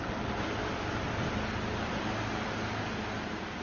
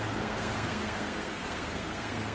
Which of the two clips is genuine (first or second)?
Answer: first